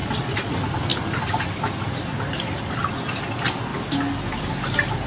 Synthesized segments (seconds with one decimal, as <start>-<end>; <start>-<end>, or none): 0.0-0.5